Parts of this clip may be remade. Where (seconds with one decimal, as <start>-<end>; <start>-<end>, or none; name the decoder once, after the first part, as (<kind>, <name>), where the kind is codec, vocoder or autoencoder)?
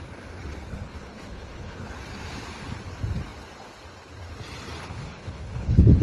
0.7-1.9 (codec, HILCodec); 4.8-6.0